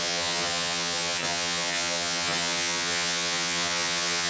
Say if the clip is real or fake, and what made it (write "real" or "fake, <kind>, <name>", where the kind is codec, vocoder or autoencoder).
fake, vocoder, HiFi-GAN